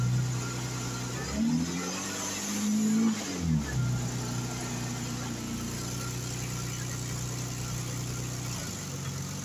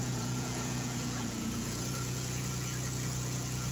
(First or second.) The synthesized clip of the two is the second